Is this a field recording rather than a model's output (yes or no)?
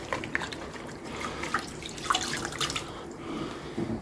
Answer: no